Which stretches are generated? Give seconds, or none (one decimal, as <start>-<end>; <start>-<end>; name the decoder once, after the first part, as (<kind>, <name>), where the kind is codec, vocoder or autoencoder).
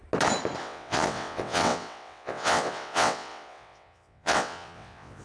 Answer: 0.6-5.2 (vocoder, WaveNeXt)